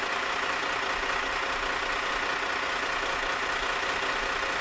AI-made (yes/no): no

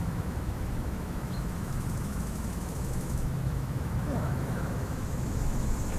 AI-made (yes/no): yes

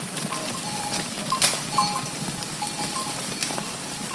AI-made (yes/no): no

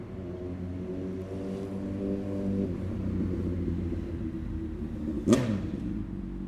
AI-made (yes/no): no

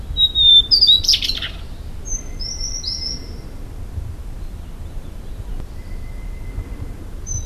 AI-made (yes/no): no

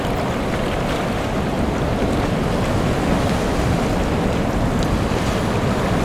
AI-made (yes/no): no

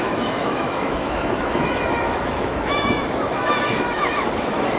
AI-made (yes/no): yes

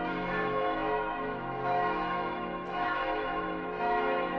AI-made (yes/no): yes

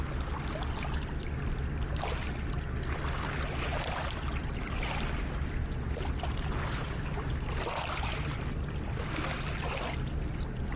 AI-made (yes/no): no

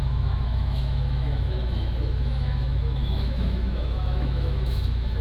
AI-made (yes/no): yes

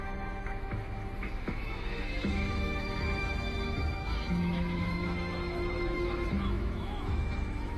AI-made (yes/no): yes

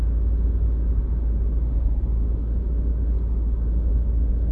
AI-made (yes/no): no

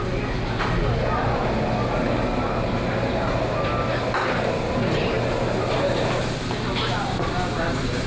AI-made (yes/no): no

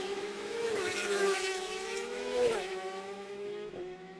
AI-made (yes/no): yes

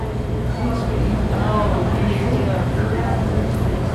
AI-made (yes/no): no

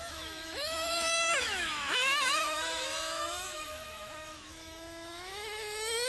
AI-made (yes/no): yes